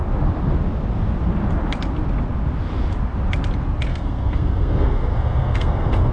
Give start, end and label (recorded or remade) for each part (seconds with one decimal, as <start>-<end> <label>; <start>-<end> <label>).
0.0-3.9 recorded; 3.9-6.1 remade